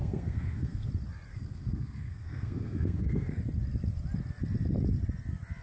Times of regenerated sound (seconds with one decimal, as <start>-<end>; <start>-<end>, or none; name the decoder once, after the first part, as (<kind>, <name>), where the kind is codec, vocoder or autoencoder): 0.0-0.9 (codec, SNAC); 1.3-3.4